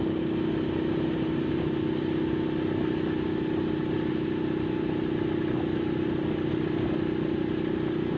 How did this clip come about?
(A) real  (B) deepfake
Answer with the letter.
A